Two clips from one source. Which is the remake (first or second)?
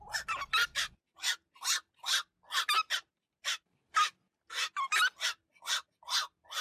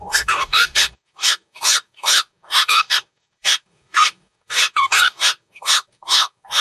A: second